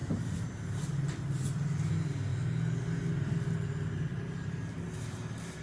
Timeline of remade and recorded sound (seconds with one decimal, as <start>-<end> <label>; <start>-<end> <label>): 0.0-1.9 remade; 1.9-4.1 recorded; 4.1-5.6 remade